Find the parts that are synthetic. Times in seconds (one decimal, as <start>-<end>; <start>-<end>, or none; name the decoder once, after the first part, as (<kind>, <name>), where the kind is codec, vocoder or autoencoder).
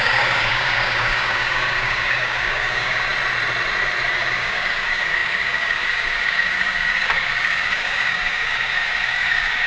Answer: 0.0-3.1 (codec, DAC); 4.1-9.7